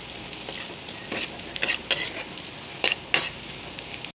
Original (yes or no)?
yes